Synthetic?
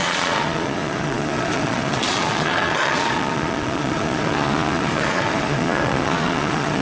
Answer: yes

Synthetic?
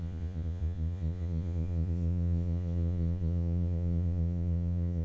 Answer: yes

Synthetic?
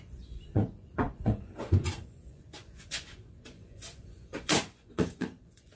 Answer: yes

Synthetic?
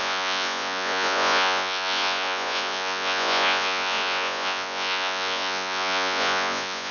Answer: yes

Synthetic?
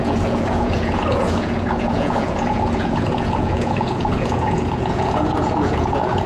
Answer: yes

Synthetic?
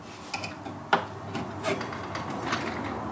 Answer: no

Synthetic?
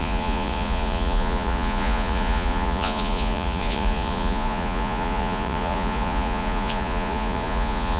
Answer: yes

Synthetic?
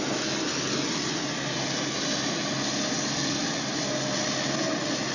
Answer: no